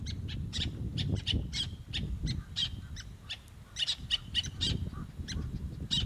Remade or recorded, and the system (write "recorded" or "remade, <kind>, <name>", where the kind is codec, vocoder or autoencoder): remade, vocoder, BigVGAN v2